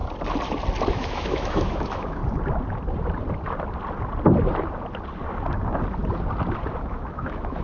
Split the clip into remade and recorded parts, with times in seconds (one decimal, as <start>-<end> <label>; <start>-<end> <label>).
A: 0.0-0.9 recorded; 0.9-2.2 remade; 2.2-6.8 recorded; 6.8-7.6 remade

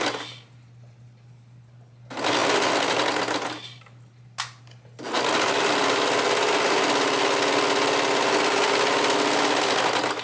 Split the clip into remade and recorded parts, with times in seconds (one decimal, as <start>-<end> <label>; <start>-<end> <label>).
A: 0.0-10.2 recorded

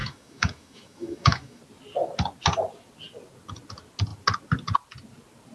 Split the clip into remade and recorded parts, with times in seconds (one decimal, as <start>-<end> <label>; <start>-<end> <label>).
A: 0.0-1.6 remade; 1.6-5.5 recorded

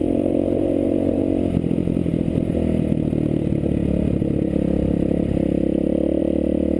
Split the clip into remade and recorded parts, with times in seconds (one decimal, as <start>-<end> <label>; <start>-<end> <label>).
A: 0.0-1.2 remade; 1.2-6.8 recorded

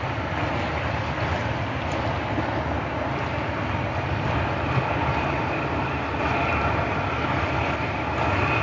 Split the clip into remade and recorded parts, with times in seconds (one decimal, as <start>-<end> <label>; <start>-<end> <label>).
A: 0.0-8.6 recorded

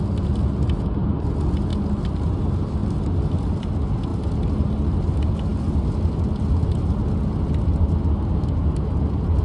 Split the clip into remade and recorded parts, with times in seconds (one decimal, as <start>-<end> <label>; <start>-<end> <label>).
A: 0.0-9.4 recorded